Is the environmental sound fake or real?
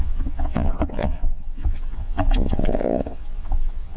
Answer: fake